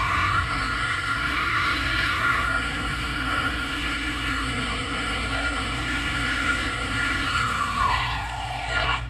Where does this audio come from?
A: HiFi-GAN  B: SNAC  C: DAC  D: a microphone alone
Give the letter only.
B